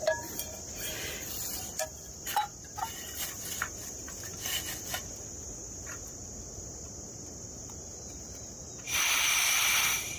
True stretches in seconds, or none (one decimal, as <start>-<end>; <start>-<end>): 4.3-5.2